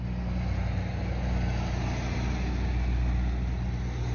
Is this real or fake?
real